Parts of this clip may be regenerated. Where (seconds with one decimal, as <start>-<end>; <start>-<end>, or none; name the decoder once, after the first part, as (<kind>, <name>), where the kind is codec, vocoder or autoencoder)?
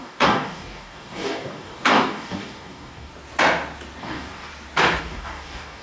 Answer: 0.0-3.1 (codec, DAC); 4.0-4.5; 5.0-5.8